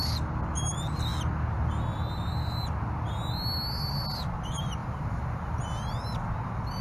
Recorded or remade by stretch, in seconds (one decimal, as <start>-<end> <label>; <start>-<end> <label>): 0.0-4.8 recorded; 4.8-5.6 remade; 5.6-6.8 recorded